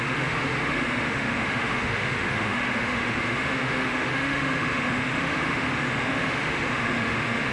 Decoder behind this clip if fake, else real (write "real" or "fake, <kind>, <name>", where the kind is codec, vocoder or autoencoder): fake, autoencoder, DAC-VAE